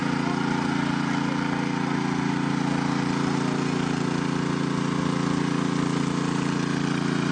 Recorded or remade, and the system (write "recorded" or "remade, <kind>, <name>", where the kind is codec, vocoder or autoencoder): recorded